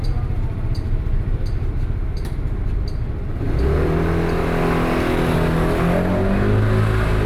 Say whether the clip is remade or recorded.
recorded